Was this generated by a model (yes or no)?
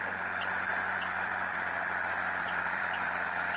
yes